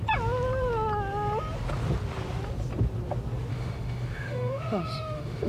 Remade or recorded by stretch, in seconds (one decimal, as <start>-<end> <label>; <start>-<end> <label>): 0.0-3.5 recorded; 3.5-5.5 remade